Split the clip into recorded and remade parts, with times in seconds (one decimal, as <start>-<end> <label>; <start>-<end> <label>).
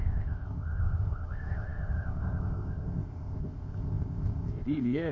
0.0-5.1 remade